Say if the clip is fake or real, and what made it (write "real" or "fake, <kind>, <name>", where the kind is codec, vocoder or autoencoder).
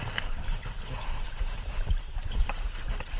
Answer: fake, vocoder, BigVGAN v2